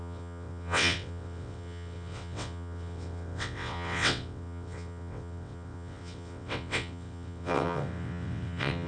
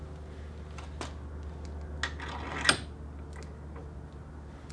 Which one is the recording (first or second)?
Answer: second